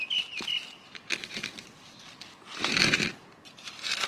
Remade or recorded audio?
recorded